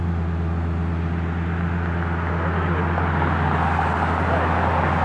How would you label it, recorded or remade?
recorded